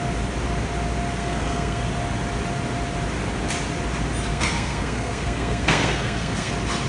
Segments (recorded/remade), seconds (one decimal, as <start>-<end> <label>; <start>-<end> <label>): 0.0-1.2 recorded; 1.2-1.8 remade; 1.8-4.3 recorded; 4.3-6.5 remade; 6.5-6.9 recorded